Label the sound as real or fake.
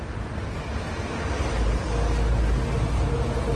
real